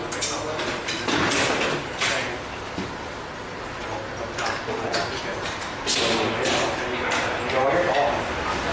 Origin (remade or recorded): recorded